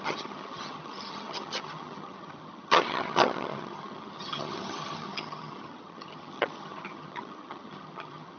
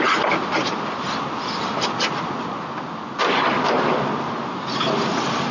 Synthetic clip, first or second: first